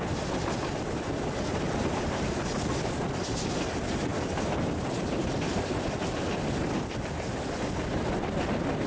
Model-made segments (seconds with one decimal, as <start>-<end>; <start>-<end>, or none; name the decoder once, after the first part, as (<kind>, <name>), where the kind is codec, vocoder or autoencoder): none